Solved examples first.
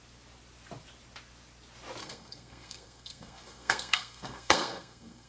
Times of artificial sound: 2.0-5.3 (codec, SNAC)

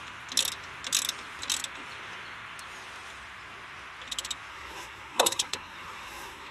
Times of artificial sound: 4.5-6.5 (codec, SNAC)

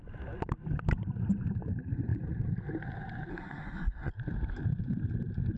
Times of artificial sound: 3.3-4.1 (codec, SNAC)